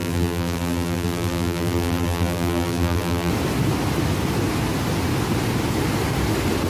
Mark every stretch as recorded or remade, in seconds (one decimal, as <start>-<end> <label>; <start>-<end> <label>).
0.0-3.3 remade; 3.3-6.7 recorded